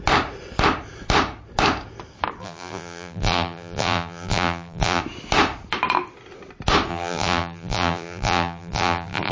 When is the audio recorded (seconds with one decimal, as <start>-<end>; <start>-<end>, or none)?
0.0-2.4; 5.0-6.9